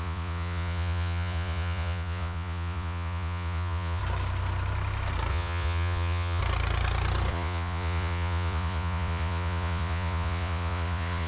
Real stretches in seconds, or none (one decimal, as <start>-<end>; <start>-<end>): 4.0-5.3; 6.4-7.3